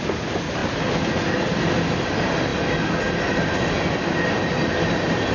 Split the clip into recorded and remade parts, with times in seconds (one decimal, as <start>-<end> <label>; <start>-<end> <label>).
0.0-5.3 recorded